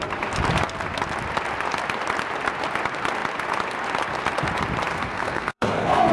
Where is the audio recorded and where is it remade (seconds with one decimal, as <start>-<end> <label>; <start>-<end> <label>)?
0.0-4.9 recorded; 4.9-6.1 remade